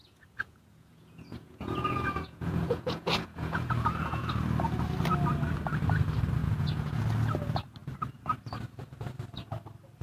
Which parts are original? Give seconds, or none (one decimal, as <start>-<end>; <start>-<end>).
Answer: 4.3-6.4; 7.0-10.0